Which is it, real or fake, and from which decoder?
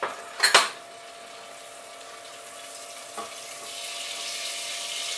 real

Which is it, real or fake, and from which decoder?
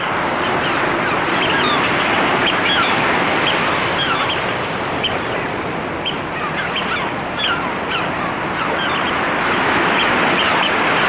real